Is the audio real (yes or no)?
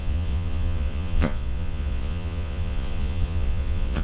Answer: no